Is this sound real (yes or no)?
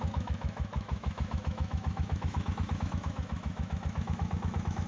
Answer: no